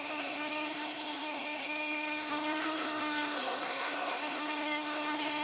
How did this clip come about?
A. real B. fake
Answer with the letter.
B